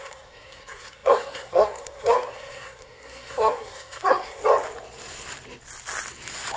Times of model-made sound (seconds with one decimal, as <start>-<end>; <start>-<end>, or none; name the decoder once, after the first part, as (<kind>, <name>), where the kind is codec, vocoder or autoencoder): 0.0-4.4 (codec, SNAC)